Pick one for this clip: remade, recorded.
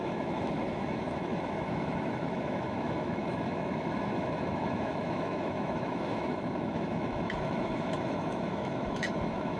remade